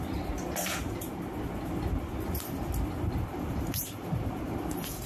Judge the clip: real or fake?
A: real